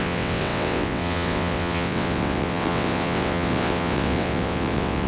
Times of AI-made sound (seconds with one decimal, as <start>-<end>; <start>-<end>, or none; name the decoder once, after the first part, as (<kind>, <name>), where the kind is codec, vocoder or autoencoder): 0.0-5.1 (vocoder, WaveNeXt)